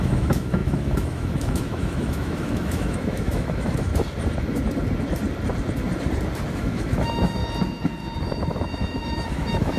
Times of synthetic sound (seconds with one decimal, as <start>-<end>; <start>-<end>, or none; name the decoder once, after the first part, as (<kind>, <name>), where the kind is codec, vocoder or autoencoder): 0.0-3.9 (autoencoder, DAC-VAE); 6.5-7.4; 8.2-9.8

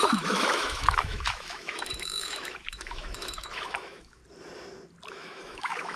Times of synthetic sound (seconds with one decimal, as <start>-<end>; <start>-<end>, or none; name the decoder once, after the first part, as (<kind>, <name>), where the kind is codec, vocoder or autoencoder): 0.0-4.2 (autoencoder, DAC-VAE); 5.1-6.0

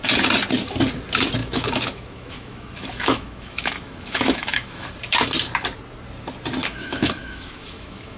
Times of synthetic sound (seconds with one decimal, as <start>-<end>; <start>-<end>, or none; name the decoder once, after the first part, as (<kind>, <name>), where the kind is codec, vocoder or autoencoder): 1.4-4.9 (autoencoder, DAC-VAE); 6.6-8.2

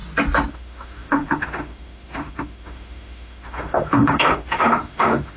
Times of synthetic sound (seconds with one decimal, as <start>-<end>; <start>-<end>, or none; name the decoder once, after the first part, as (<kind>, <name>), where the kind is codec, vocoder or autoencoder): 0.5-5.4 (autoencoder, DAC-VAE)

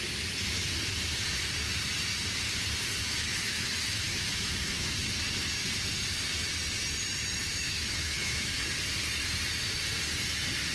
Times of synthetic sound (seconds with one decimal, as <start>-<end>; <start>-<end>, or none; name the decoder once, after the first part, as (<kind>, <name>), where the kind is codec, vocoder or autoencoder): 3.0-4.9 (autoencoder, DAC-VAE); 7.4-8.6

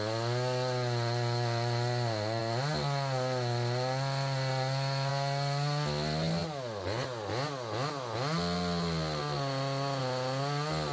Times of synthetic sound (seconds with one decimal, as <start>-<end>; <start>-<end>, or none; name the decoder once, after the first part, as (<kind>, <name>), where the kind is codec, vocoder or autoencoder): none

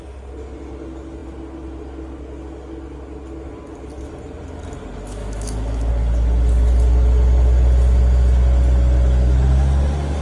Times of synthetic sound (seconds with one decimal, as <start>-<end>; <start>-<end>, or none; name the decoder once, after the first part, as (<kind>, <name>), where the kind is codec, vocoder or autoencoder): 5.2-5.9 (autoencoder, DAC-VAE)